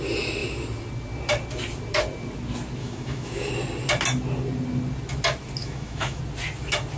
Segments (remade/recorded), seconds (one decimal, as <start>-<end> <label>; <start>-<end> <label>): 0.0-2.8 recorded; 2.8-3.5 remade; 3.5-5.6 recorded; 5.6-6.2 remade; 6.2-7.0 recorded